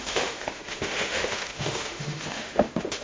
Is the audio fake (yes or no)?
yes